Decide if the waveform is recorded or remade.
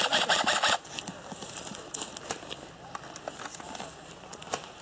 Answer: recorded